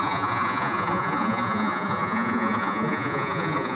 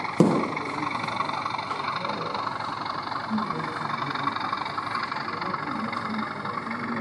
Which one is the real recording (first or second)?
second